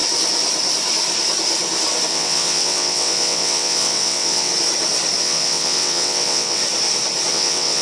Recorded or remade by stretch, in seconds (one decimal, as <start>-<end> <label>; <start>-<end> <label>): 0.0-2.1 recorded; 2.1-4.5 remade; 4.5-5.2 recorded; 5.2-6.6 remade; 6.6-7.3 recorded; 7.3-7.8 remade